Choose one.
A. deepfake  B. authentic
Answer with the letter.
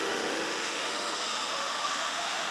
A